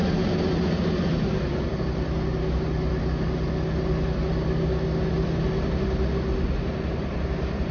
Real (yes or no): yes